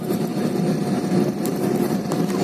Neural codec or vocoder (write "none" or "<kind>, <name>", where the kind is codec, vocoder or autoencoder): vocoder, BigVGAN v2